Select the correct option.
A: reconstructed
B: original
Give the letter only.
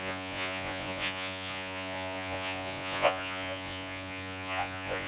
A